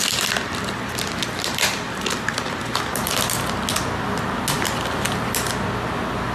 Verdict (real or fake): real